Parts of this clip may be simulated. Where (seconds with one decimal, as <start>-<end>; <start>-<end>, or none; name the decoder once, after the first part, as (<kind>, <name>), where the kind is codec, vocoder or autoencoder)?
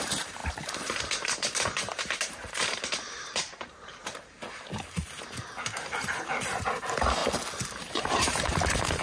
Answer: 0.0-0.4 (vocoder, BigVGAN v2); 1.0-4.0; 5.6-7.2; 7.9-9.0